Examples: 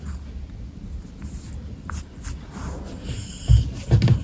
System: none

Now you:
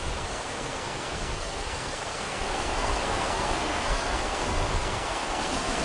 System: codec, SNAC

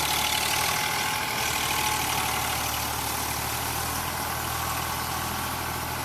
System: none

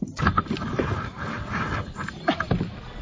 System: none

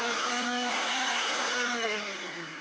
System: codec, SNAC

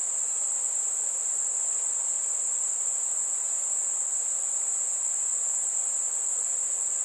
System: none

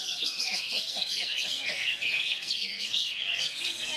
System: codec, SNAC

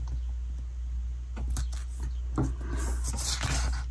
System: none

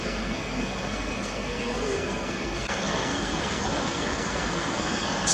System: codec, SNAC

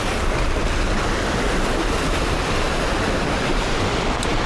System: none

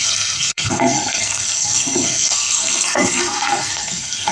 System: codec, SNAC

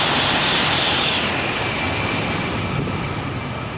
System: none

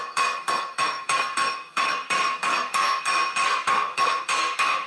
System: codec, SNAC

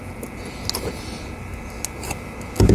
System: none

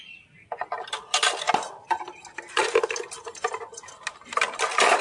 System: none